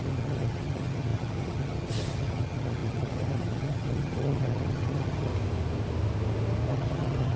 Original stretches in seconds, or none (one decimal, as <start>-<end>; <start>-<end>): 5.3-6.7